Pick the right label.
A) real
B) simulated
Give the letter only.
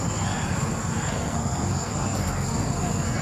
B